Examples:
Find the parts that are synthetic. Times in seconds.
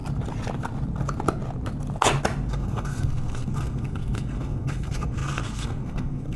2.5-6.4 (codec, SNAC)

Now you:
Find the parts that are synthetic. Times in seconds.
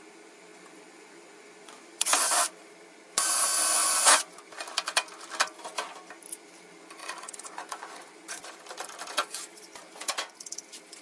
0.5-2.1 (vocoder, Vocos); 3.8-4.4; 7.0-8.4; 9.2-10.1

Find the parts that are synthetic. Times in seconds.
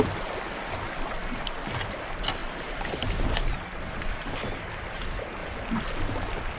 none